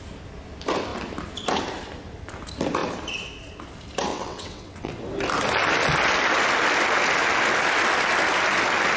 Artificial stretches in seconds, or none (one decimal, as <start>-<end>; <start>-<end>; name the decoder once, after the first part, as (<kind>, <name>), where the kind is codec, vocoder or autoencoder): 4.1-4.9 (vocoder, WaveNeXt)